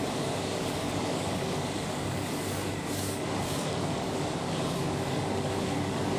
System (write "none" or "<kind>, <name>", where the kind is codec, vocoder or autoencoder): codec, DAC